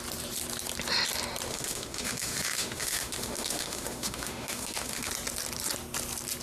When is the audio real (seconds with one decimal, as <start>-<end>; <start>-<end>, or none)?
0.0-1.5; 5.1-6.4